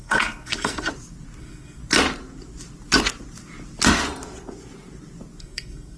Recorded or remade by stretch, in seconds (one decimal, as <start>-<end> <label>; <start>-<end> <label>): 0.0-0.9 remade; 0.9-1.4 recorded; 1.4-1.8 remade; 1.8-5.4 recorded; 5.4-6.0 remade